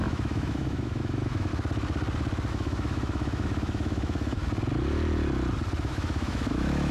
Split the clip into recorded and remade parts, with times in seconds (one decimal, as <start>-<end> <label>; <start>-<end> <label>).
0.0-1.5 remade; 1.5-2.5 recorded; 2.5-4.4 remade; 4.4-5.8 recorded; 5.8-6.9 remade